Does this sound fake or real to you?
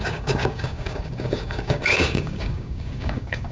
fake